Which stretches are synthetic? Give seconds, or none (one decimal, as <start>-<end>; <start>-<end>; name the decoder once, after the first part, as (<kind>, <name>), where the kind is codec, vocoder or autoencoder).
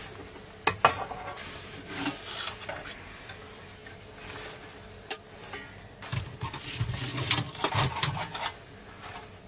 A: none